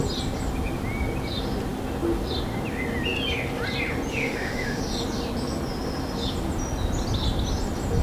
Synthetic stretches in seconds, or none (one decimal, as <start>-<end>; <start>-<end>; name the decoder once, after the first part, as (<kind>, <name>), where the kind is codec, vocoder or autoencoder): 4.1-4.8 (autoencoder, DAC-VAE)